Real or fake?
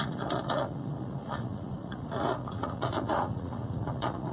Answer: fake